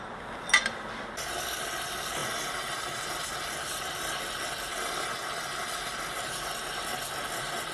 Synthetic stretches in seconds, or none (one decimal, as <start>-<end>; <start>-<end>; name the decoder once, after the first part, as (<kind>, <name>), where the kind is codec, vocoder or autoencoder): none